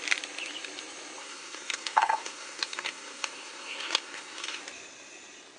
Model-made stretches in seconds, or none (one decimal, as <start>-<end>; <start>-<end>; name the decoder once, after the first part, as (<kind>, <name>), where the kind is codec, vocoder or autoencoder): 1.2-4.6 (codec, SNAC)

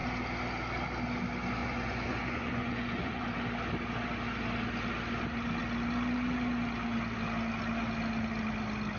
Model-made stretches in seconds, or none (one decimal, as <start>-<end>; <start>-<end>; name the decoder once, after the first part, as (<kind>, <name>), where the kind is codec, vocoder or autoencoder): 1.6-3.2 (vocoder, Vocos)

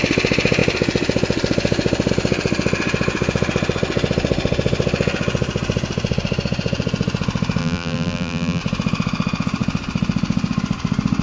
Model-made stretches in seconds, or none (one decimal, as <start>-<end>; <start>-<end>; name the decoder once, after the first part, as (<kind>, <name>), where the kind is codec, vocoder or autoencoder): 7.6-8.6 (vocoder, BigVGAN v2)

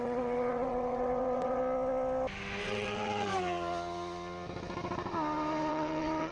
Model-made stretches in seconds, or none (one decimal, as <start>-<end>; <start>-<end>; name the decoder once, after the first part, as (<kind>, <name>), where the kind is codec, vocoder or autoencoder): 0.0-1.6 (vocoder, WaveNeXt); 2.6-3.3; 5.7-6.3